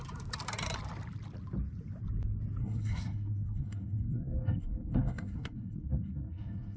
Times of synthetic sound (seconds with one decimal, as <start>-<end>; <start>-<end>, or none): 2.6-6.8